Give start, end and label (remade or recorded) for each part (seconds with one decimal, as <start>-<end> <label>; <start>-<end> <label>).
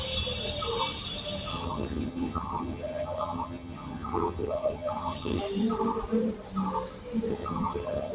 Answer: 0.0-1.5 recorded; 1.5-5.4 remade; 5.4-7.3 recorded; 7.3-8.1 remade